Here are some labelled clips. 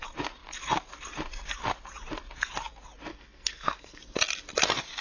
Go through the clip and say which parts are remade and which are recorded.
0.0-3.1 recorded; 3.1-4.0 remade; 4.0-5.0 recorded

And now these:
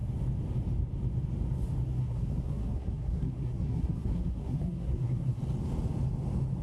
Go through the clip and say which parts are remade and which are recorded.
0.0-2.0 recorded; 2.0-5.4 remade; 5.4-6.6 recorded

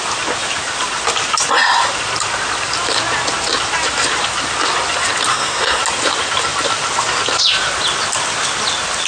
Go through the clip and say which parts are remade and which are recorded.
0.0-5.3 recorded; 5.3-5.8 remade; 5.8-9.1 recorded

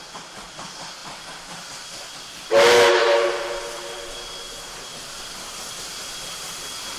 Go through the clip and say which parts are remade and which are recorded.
0.0-7.0 recorded

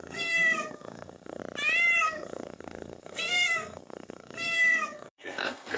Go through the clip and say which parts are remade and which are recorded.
0.0-1.4 remade; 1.4-2.0 recorded; 2.0-5.8 remade